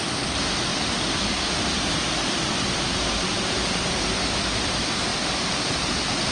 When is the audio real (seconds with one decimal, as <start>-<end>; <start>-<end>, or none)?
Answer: 0.7-2.7